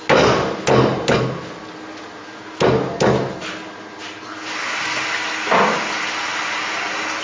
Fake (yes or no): no